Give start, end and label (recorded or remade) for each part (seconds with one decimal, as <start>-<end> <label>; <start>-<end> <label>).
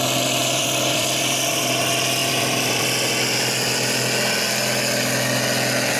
0.0-0.4 recorded; 0.4-1.6 remade; 1.6-2.2 recorded; 2.2-2.8 remade; 2.8-6.0 recorded